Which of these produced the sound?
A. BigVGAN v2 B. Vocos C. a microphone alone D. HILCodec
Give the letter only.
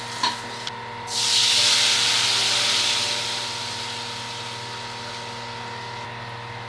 C